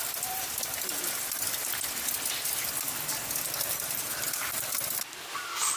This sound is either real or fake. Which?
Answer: real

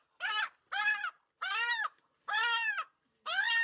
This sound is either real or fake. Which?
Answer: real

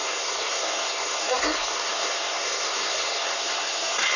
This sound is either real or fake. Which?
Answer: fake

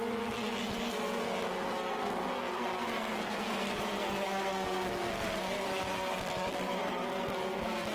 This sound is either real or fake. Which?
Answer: fake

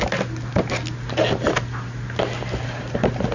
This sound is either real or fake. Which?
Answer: real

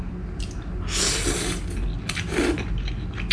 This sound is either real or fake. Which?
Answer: real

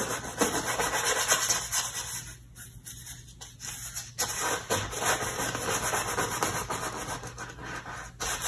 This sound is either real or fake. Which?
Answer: real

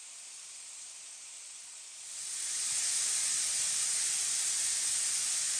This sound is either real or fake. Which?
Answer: real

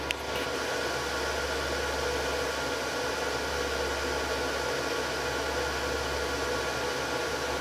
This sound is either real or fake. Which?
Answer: real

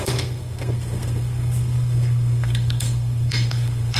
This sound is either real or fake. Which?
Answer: fake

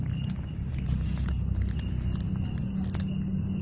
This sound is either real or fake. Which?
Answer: real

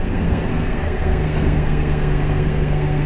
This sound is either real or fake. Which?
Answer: fake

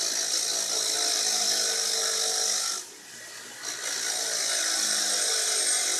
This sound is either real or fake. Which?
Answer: real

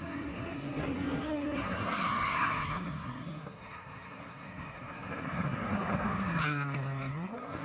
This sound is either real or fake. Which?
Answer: fake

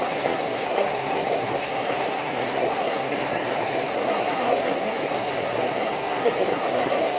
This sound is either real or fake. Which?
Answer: fake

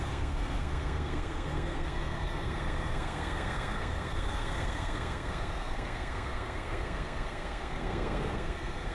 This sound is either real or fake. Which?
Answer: fake